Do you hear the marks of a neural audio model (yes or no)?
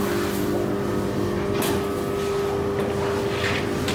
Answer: no